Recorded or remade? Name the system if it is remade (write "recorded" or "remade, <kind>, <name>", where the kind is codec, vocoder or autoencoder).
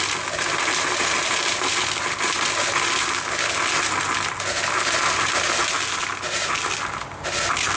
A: recorded